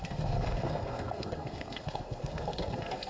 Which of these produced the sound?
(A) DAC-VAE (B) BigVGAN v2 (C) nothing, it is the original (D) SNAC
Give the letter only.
D